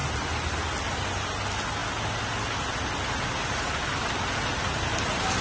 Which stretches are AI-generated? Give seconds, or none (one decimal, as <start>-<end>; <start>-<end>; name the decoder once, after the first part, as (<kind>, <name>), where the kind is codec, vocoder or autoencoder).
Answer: none